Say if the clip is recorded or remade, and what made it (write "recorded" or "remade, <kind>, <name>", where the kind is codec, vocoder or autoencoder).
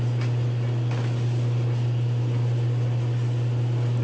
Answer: recorded